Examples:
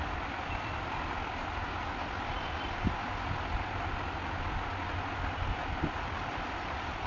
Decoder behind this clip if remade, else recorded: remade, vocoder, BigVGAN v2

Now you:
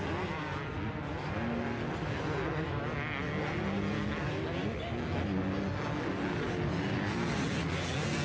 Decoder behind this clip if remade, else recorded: recorded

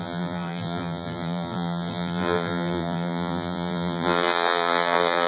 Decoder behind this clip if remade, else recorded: remade, vocoder, BigVGAN v2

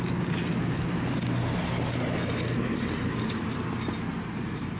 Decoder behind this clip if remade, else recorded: recorded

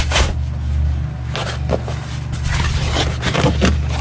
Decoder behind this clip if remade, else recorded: recorded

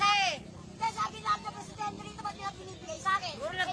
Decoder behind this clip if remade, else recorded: recorded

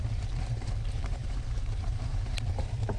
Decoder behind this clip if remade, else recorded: remade, vocoder, BigVGAN v2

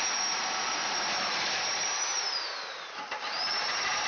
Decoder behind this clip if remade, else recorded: remade, vocoder, BigVGAN v2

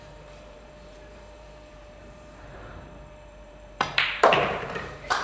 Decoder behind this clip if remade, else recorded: remade, vocoder, BigVGAN v2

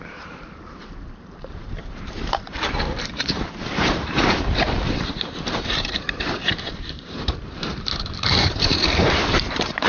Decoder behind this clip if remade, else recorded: remade, vocoder, BigVGAN v2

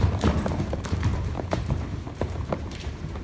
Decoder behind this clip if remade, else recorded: remade, vocoder, BigVGAN v2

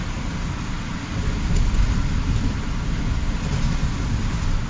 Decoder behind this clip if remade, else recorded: recorded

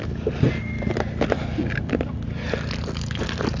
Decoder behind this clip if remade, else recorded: recorded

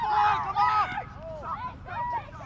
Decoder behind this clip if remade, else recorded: recorded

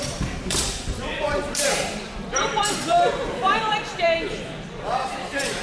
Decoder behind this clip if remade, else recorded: remade, vocoder, BigVGAN v2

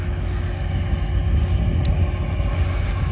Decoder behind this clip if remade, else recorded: recorded